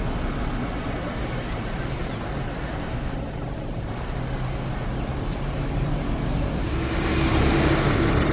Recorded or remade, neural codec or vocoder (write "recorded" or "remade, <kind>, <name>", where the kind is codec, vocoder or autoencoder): recorded